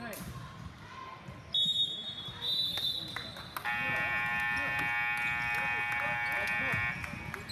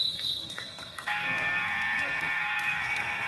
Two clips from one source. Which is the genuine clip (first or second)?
first